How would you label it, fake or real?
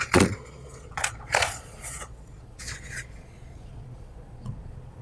fake